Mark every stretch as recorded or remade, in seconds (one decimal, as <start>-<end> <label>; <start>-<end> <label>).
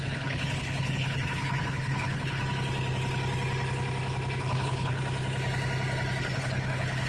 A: 0.0-2.4 remade; 2.4-4.4 recorded; 4.4-5.0 remade; 5.0-6.2 recorded; 6.2-7.1 remade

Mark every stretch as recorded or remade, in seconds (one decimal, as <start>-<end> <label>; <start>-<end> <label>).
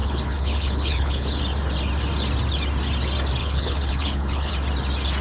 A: 0.0-1.4 remade; 1.4-3.4 recorded; 3.4-4.5 remade; 4.5-5.2 recorded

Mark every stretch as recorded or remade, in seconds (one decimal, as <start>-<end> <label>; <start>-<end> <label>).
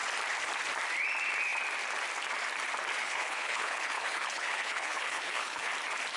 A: 0.0-3.0 recorded; 3.0-5.7 remade; 5.7-6.2 recorded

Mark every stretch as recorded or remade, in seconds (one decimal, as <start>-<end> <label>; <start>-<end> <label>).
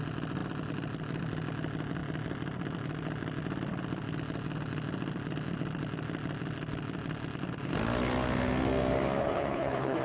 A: 0.0-9.2 recorded; 9.2-10.0 remade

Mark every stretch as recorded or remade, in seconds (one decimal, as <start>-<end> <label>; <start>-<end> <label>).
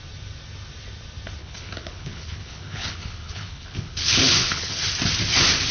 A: 0.0-1.4 recorded; 1.4-4.8 remade; 4.8-5.7 recorded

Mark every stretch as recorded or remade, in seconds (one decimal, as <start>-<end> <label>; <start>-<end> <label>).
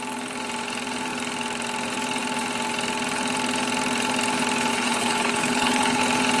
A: 0.0-4.7 recorded; 4.7-6.0 remade; 6.0-6.4 recorded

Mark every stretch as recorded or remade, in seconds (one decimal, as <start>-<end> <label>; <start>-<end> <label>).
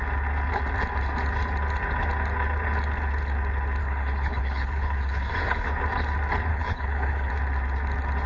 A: 0.0-3.8 recorded; 3.8-5.7 remade; 5.7-6.5 recorded; 6.5-7.3 remade; 7.3-8.3 recorded